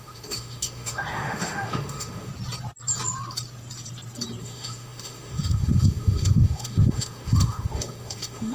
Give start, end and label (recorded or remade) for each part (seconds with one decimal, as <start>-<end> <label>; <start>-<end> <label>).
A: 0.0-2.3 remade; 2.3-4.4 recorded; 4.4-8.5 remade